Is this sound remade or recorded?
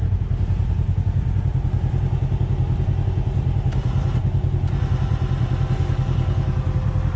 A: recorded